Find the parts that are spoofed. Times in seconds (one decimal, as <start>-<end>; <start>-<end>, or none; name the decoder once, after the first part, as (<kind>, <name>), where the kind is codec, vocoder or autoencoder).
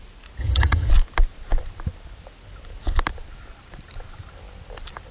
0.4-0.9 (vocoder, HiFi-GAN)